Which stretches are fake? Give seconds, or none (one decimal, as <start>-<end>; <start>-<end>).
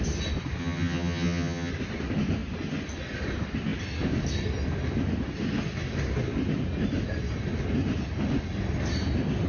0.6-1.7